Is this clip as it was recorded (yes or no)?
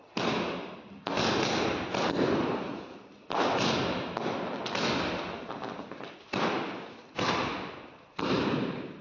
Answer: yes